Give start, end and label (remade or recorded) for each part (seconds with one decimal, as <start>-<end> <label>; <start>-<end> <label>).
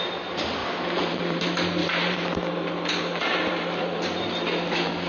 0.0-0.6 recorded; 0.6-1.4 remade; 1.4-1.8 recorded; 1.8-5.1 remade